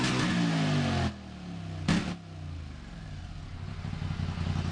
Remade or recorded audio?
recorded